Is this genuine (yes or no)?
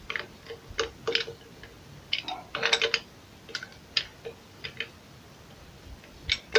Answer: yes